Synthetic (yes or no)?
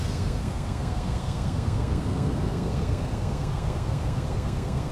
yes